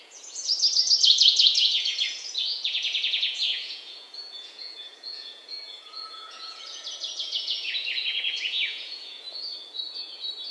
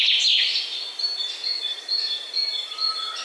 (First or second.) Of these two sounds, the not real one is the first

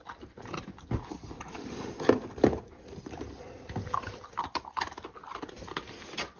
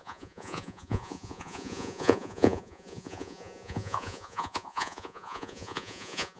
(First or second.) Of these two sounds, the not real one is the second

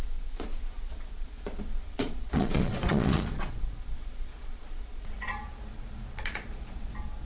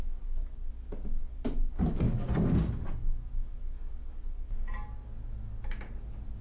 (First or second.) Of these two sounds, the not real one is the first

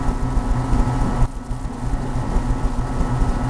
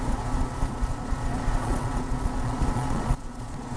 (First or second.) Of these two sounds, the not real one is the second